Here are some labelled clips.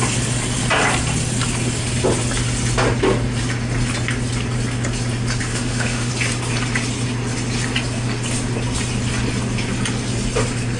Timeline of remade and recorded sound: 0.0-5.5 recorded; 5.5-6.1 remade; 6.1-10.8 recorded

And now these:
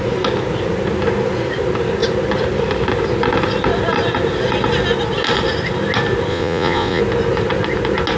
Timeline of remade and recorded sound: 0.0-6.3 recorded; 6.3-7.0 remade; 7.0-8.2 recorded

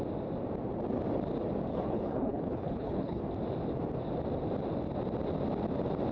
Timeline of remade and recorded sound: 0.0-1.7 recorded; 1.7-3.2 remade; 3.2-6.1 recorded